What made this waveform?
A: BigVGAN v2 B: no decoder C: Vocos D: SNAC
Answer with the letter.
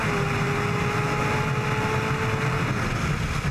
B